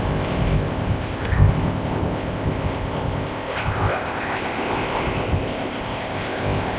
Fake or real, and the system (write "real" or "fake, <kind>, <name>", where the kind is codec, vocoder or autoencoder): fake, codec, ZipCodec